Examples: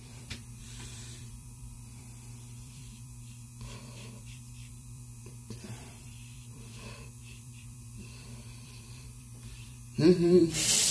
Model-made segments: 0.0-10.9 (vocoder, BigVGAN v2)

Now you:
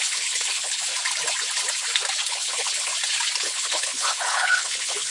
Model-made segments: 0.0-0.9 (codec, HILCodec); 2.3-2.9; 3.4-5.1

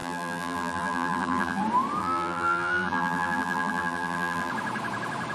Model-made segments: 0.0-1.6 (vocoder, BigVGAN v2); 2.0-4.5

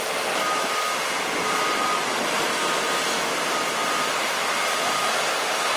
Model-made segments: 3.8-5.0 (vocoder, BigVGAN v2)

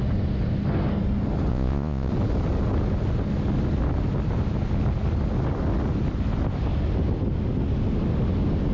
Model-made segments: 1.5-2.1 (vocoder, Vocos)